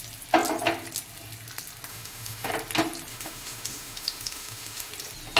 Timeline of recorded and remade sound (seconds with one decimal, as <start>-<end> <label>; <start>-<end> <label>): 0.0-1.9 recorded; 1.9-2.5 remade; 2.5-3.1 recorded; 3.1-4.9 remade; 4.9-5.4 recorded